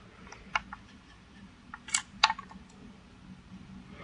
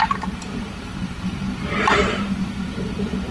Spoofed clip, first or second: second